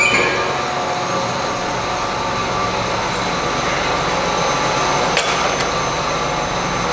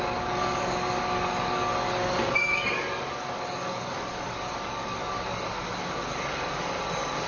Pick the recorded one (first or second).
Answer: first